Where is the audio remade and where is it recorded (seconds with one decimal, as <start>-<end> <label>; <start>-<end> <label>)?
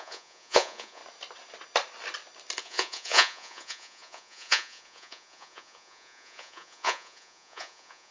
0.0-1.0 remade; 1.0-2.6 recorded; 2.6-8.1 remade